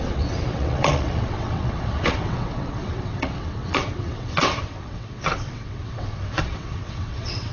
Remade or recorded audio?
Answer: remade